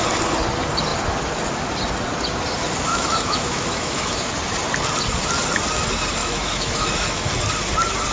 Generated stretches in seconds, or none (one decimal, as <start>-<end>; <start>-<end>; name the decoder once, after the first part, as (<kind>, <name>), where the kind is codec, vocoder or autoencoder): 2.9-4.3 (autoencoder, DAC-VAE); 6.2-7.3